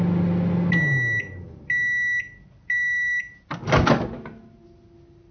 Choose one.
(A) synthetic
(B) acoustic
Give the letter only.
B